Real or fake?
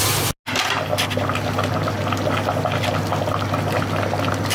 real